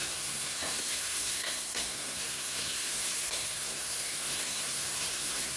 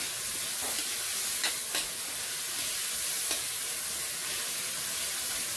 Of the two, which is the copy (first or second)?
first